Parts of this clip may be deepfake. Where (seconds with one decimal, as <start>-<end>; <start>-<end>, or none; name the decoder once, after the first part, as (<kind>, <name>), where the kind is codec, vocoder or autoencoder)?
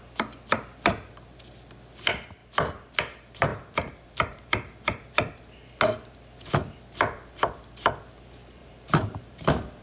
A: 3.5-5.1 (vocoder, BigVGAN v2); 8.6-9.8